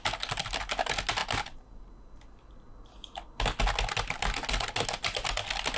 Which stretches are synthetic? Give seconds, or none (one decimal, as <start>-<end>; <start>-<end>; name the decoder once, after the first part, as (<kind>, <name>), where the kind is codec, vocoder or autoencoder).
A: none